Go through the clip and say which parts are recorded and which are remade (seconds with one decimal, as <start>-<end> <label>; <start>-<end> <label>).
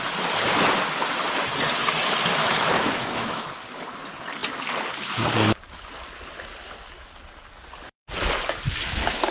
0.0-2.3 recorded; 2.3-3.4 remade; 3.4-9.3 recorded